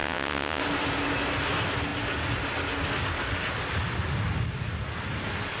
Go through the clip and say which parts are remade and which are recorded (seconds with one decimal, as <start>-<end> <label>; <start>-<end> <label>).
0.0-0.6 remade; 0.6-5.6 recorded